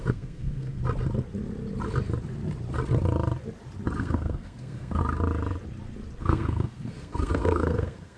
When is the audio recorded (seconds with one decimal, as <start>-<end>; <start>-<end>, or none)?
0.8-4.0; 5.0-6.2